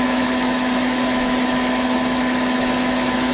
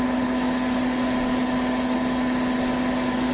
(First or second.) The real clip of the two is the second